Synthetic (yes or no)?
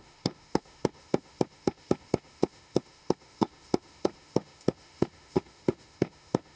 yes